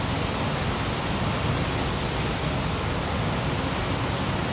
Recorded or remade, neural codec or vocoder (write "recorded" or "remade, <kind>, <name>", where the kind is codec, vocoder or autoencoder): recorded